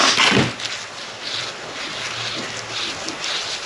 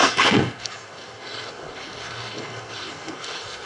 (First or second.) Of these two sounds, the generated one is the second